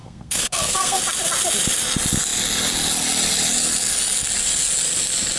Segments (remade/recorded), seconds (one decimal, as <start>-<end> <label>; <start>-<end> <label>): 0.0-1.0 remade; 1.0-5.4 recorded